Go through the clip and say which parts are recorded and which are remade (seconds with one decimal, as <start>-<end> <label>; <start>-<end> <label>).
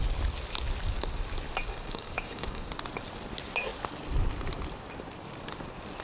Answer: 0.0-1.6 recorded; 1.6-2.7 remade; 2.7-6.0 recorded